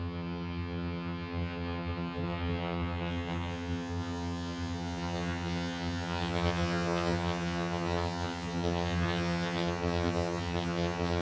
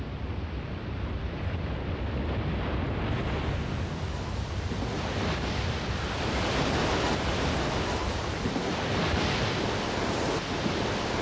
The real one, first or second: second